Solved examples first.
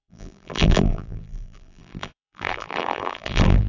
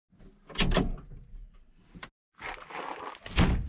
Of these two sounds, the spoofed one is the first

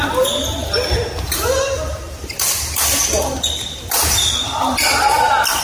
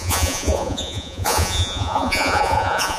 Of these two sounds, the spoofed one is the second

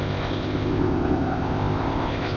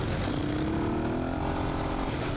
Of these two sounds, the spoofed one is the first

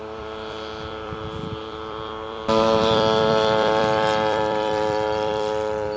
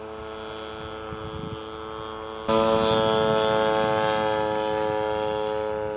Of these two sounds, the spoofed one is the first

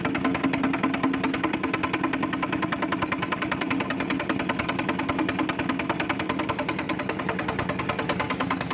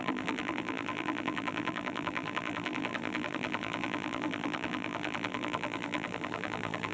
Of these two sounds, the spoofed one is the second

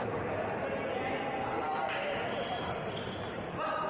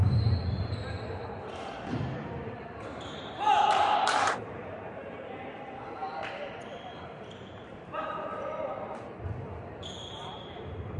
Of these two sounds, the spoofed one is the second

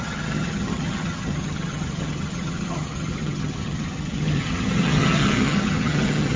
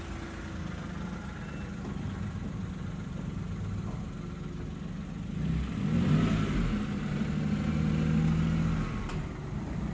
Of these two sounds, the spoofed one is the first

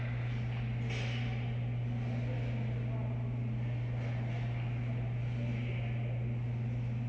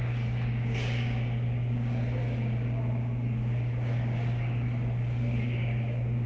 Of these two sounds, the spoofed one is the second